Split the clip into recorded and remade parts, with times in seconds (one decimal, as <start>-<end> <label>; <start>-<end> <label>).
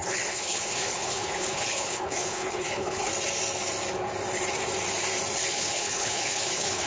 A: 0.0-3.1 remade; 3.1-5.5 recorded; 5.5-6.9 remade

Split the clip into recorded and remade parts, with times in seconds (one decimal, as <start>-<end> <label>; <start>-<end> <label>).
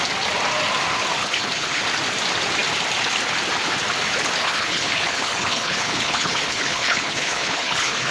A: 0.0-1.2 recorded; 1.2-1.8 remade; 1.8-4.4 recorded; 4.4-8.1 remade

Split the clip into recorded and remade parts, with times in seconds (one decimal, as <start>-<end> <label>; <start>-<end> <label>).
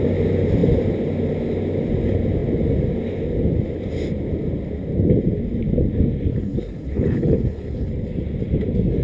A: 0.0-6.3 recorded; 6.3-7.9 remade; 7.9-9.0 recorded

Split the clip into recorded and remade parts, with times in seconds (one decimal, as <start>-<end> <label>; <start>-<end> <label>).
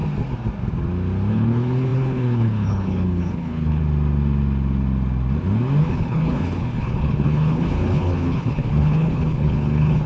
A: 0.0-1.3 recorded; 1.3-3.8 remade; 3.8-5.8 recorded; 5.8-10.1 remade